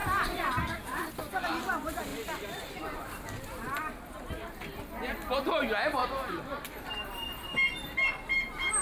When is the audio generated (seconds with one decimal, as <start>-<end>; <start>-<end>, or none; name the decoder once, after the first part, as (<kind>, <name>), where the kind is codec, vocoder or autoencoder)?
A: 0.0-1.1 (vocoder, BigVGAN v2); 6.0-6.6